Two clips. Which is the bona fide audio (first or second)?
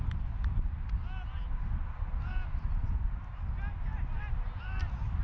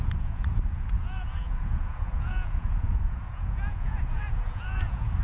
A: first